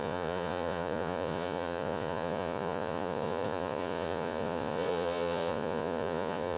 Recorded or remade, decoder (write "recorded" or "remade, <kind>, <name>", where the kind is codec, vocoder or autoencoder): remade, vocoder, Vocos